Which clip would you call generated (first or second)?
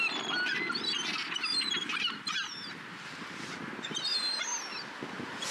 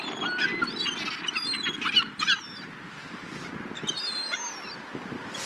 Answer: first